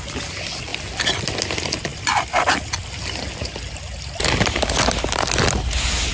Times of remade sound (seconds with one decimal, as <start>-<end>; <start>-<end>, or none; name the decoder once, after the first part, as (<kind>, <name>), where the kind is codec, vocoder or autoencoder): none